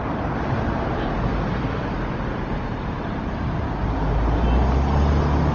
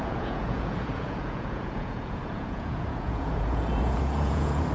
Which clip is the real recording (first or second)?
first